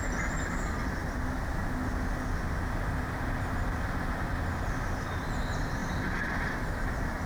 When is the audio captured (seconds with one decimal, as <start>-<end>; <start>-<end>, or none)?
0.0-7.3